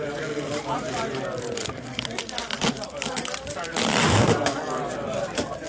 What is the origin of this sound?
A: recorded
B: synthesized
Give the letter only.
B